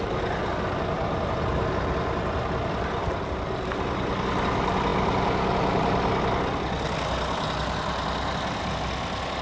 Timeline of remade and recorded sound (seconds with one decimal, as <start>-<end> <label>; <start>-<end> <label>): 0.0-9.4 recorded